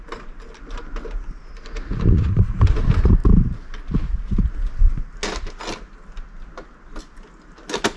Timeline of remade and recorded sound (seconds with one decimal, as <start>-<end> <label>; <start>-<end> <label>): 0.0-8.0 recorded